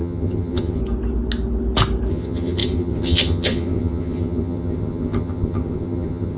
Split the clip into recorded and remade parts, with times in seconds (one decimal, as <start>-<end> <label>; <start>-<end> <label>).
0.0-0.8 remade; 0.8-2.1 recorded; 2.1-6.4 remade